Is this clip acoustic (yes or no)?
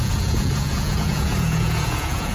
no